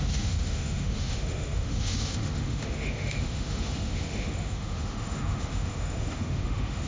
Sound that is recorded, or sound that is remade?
remade